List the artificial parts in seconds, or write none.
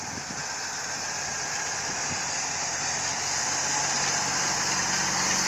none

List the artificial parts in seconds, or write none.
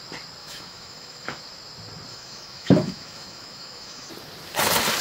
0.4-1.4 (autoencoder, DAC-VAE); 2.1-4.1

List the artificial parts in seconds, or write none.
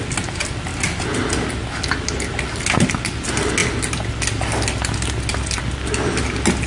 none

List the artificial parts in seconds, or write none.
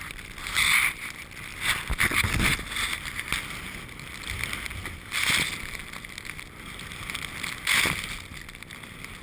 none